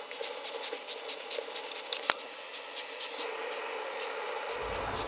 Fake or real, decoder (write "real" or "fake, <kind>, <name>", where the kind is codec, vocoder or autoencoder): real